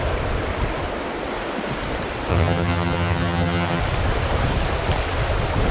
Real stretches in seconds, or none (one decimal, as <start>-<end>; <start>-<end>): 0.0-2.3; 3.8-5.7